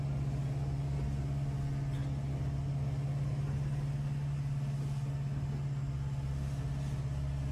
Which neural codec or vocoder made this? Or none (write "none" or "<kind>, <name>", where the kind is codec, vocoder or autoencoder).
none